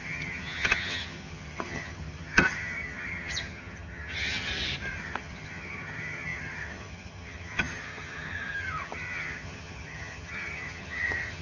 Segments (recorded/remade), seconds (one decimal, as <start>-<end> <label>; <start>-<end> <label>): 0.0-4.5 remade; 4.5-5.0 recorded; 5.0-11.4 remade